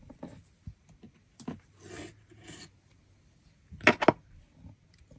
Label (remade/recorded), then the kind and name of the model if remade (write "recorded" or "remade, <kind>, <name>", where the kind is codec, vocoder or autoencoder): recorded